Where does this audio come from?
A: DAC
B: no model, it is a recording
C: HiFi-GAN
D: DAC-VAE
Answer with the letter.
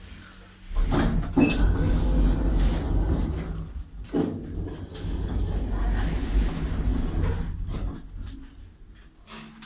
B